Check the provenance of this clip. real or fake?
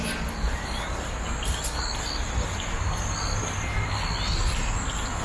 real